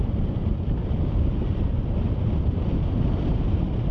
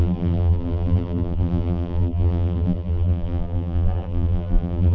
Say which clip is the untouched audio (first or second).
first